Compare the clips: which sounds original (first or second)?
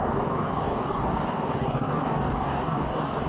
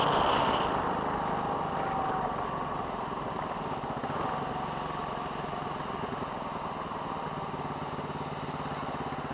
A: second